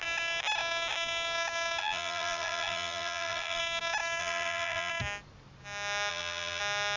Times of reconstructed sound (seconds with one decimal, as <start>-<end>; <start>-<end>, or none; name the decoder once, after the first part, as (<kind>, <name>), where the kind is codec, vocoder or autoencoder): 1.8-3.6 (vocoder, BigVGAN v2); 4.2-4.9; 6.1-6.6